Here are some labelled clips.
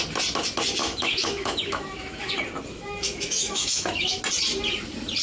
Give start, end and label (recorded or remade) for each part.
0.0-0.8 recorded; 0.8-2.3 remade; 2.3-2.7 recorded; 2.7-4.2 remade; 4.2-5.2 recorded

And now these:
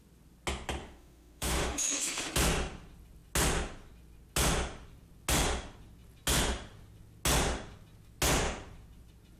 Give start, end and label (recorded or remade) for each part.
0.0-0.8 recorded; 0.8-2.3 remade; 2.3-9.4 recorded

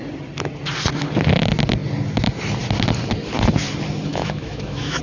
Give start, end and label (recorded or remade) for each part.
0.0-4.1 recorded; 4.1-5.0 remade

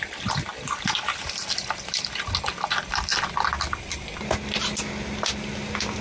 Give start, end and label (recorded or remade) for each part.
0.0-6.0 recorded